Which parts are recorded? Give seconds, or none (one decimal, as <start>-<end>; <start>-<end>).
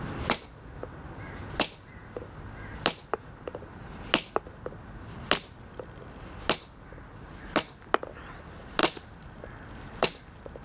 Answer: 0.0-10.6